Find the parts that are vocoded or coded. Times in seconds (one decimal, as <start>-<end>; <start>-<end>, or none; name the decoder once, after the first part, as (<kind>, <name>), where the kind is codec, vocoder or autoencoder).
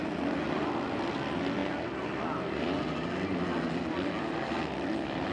none